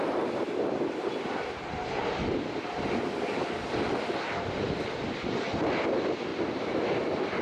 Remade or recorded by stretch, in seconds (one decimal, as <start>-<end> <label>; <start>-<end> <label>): 0.0-6.3 recorded; 6.3-6.8 remade; 6.8-7.4 recorded